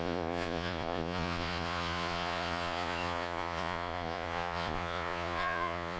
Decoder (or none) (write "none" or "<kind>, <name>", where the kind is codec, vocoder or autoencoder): vocoder, Vocos